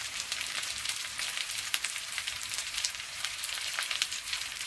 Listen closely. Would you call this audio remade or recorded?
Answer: remade